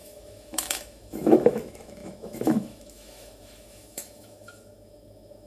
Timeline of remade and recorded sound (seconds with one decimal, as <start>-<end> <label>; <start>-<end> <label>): 0.0-5.5 remade